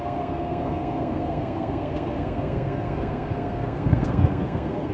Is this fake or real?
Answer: fake